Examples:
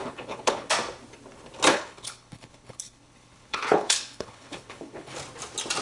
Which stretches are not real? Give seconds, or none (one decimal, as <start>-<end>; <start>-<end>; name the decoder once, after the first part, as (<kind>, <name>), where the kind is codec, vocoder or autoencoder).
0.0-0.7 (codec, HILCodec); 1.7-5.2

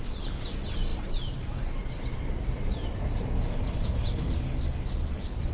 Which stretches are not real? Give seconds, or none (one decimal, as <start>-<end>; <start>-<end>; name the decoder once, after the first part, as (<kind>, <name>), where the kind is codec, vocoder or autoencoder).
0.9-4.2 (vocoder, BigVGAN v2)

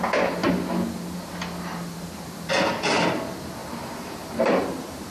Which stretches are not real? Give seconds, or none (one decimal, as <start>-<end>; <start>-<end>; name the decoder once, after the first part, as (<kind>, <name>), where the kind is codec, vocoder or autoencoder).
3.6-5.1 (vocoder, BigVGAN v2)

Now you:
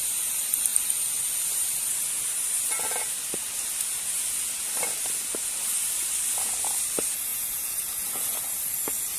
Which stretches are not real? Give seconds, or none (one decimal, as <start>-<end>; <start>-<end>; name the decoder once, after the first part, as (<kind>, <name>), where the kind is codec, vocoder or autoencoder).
7.3-8.5 (vocoder, Vocos)

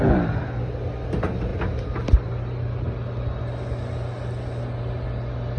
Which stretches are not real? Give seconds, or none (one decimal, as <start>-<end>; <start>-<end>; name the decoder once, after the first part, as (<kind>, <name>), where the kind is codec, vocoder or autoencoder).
none

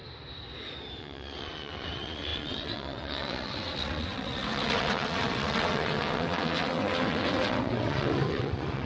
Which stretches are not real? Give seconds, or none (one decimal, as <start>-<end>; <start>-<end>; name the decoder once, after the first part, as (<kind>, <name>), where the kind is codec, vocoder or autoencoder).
1.0-8.9 (vocoder, WaveNeXt)

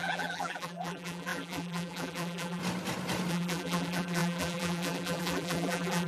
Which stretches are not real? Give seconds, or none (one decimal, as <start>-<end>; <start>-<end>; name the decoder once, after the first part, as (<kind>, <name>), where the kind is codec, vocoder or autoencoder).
0.0-2.6 (vocoder, BigVGAN v2); 3.3-6.1

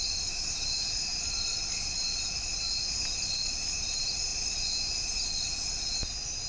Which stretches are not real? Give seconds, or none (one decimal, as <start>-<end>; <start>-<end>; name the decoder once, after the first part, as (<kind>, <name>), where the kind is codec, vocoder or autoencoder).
none